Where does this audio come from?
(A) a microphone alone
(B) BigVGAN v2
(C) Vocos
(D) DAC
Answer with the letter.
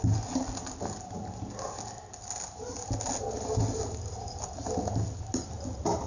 A